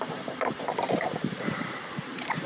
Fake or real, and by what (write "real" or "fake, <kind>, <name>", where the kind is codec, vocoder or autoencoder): fake, vocoder, BigVGAN v2